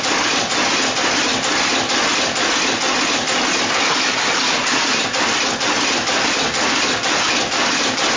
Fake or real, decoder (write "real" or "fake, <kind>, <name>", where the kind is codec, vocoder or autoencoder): real